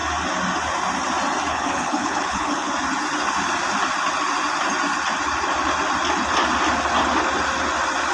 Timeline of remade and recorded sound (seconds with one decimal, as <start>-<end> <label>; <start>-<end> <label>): 0.0-1.5 recorded; 1.5-2.7 remade; 2.7-8.1 recorded